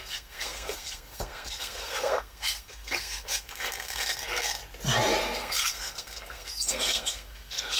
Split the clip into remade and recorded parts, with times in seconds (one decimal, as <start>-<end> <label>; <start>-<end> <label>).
0.0-4.6 remade; 4.6-5.2 recorded; 5.2-7.8 remade